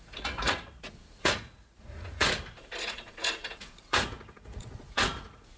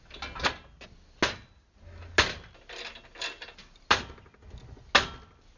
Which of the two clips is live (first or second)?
second